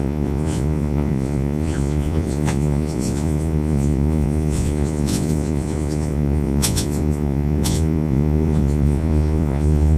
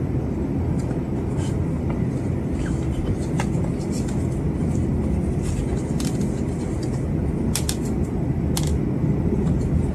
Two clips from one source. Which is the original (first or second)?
second